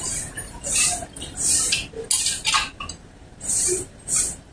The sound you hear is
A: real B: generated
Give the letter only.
A